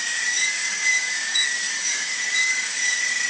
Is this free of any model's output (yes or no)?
no